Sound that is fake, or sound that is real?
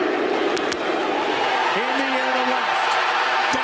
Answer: real